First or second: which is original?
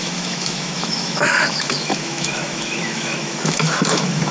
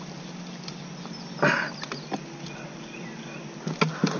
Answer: second